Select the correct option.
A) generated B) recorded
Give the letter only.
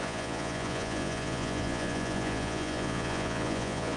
A